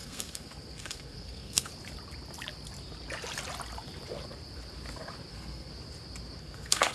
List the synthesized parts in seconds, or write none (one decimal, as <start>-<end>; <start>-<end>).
0.0-1.7; 5.3-5.7; 6.4-6.9